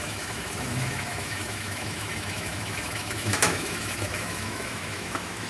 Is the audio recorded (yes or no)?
no